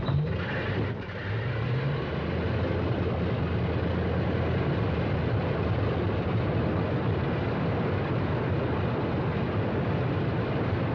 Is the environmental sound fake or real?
real